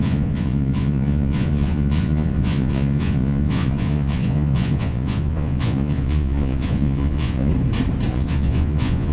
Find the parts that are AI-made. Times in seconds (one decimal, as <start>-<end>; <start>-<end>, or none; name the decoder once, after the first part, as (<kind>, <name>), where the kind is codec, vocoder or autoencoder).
0.0-7.5 (vocoder, Vocos); 8.1-9.1